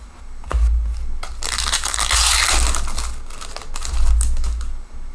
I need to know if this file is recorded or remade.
recorded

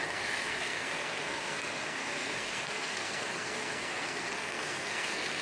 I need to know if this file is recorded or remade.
remade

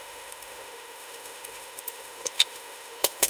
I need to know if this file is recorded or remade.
remade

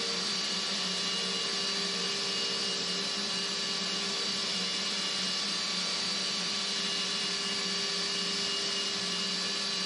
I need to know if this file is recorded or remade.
recorded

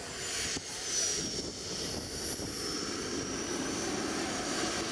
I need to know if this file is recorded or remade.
recorded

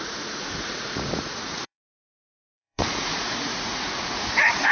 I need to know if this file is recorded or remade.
remade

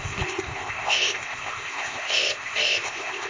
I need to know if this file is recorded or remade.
remade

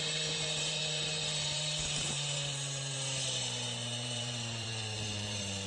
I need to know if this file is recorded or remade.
remade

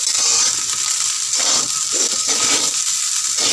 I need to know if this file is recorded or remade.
recorded